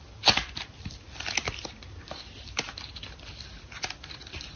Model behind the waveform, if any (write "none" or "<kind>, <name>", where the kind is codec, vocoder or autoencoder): none